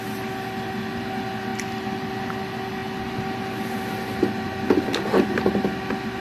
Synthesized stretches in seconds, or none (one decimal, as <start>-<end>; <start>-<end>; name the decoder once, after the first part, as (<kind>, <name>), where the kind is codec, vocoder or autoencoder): none